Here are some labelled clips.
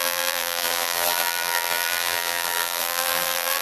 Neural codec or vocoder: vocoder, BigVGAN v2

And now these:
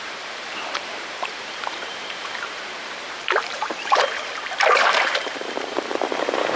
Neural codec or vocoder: vocoder, BigVGAN v2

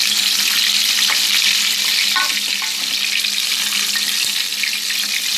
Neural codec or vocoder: none